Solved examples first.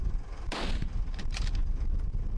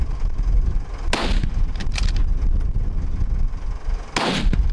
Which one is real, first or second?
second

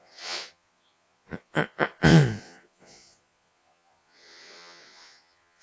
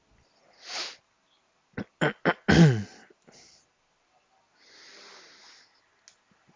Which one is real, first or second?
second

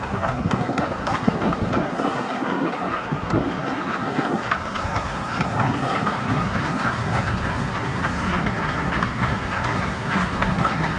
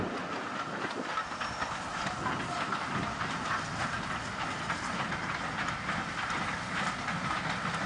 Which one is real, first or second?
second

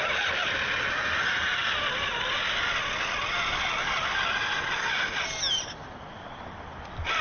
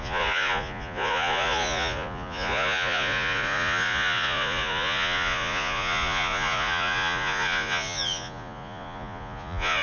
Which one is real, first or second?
first